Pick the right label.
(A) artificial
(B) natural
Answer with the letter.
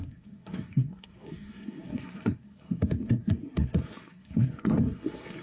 A